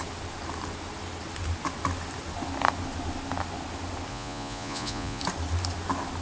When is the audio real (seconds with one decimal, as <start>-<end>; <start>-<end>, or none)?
0.0-4.1; 5.2-6.2